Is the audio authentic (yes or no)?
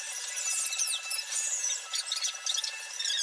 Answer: yes